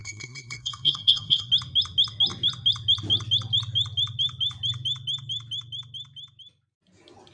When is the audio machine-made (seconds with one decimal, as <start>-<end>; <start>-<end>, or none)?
0.0-1.5